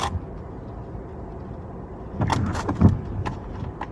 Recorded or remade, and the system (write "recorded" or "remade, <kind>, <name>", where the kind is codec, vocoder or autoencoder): recorded